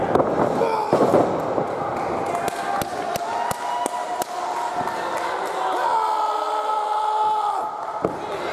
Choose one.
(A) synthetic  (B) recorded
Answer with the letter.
B